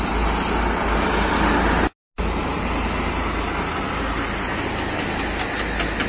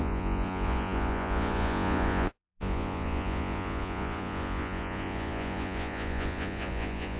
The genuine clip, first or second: first